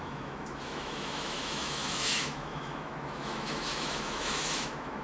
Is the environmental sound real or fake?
fake